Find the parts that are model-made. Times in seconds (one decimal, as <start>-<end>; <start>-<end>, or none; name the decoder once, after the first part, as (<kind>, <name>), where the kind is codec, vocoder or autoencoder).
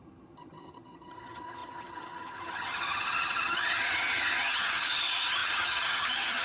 0.0-6.4 (vocoder, HiFi-GAN)